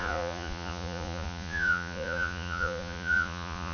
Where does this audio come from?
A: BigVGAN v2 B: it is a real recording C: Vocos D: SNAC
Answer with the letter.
C